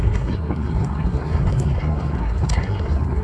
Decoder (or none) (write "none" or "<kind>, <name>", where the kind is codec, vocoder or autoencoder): codec, SNAC